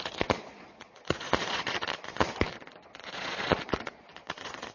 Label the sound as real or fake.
fake